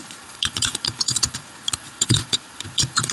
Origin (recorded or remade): remade